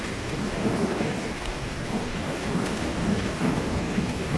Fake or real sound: fake